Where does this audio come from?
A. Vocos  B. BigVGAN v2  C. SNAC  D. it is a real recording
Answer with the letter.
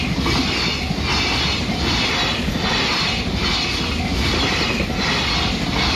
D